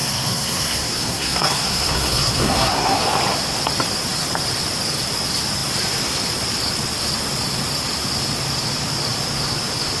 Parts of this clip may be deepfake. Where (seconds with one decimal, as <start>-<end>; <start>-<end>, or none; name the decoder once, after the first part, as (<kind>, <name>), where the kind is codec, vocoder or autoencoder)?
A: 0.0-3.0 (codec, SNAC)